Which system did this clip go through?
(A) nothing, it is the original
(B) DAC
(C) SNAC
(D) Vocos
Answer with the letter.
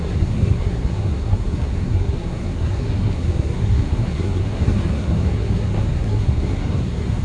C